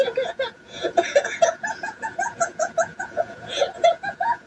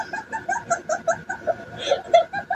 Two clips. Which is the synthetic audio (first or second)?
first